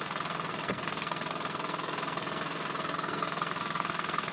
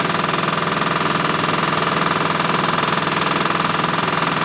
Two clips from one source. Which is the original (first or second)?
second